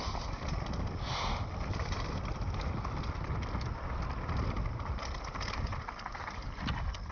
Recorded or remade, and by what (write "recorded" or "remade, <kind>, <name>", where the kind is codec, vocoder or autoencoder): recorded